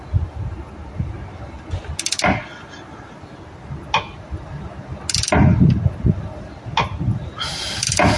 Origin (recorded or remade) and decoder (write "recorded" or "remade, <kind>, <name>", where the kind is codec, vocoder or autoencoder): recorded